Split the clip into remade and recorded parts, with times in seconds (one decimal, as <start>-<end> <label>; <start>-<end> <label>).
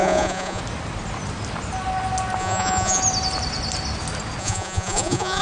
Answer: 0.0-0.6 remade; 0.6-2.4 recorded; 2.4-3.0 remade; 3.0-4.4 recorded; 4.4-5.4 remade